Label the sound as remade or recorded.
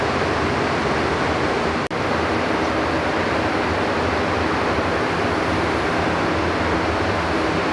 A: recorded